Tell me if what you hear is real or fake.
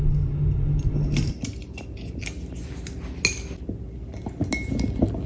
real